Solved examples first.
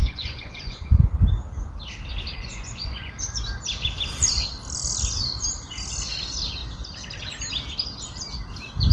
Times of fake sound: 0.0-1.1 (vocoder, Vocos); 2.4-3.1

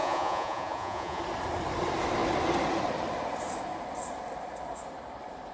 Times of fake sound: 0.0-1.2 (vocoder, Vocos)

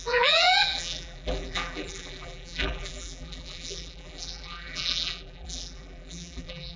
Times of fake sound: 0.0-6.8 (vocoder, BigVGAN v2)

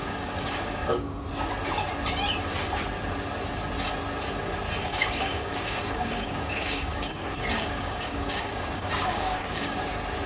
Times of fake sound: 0.0-1.2 (codec, DAC); 4.8-9.8

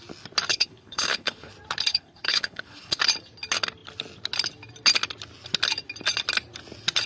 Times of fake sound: 0.5-1.5 (codec, HILCodec); 1.9-3.0

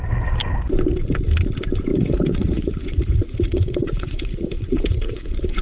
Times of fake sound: 1.9-5.6 (vocoder, Vocos)

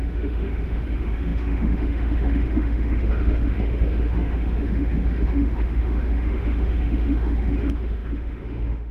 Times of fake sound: 0.0-8.9 (autoencoder, DAC-VAE)

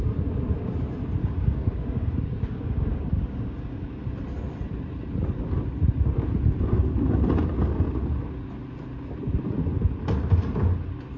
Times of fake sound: 1.2-4.0 (codec, DAC)